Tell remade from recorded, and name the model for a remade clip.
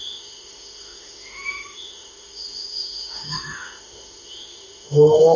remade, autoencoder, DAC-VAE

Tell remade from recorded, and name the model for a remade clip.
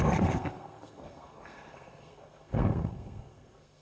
remade, codec, SNAC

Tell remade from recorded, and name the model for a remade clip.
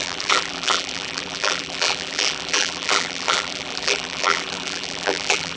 remade, vocoder, BigVGAN v2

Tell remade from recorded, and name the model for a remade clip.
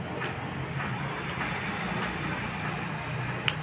recorded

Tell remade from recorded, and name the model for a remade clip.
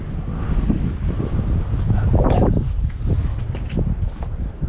recorded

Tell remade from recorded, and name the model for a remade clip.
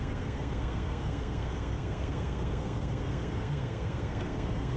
remade, codec, SNAC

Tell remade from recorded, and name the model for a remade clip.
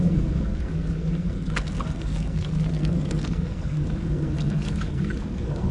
remade, codec, SNAC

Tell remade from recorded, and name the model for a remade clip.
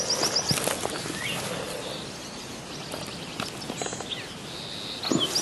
recorded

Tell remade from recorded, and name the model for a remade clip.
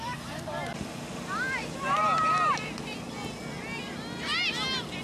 recorded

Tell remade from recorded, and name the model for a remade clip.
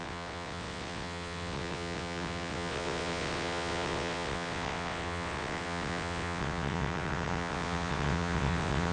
remade, vocoder, WaveNeXt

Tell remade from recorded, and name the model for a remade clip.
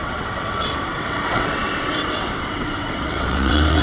remade, vocoder, WaveNeXt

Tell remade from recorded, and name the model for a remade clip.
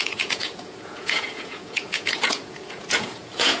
remade, vocoder, Vocos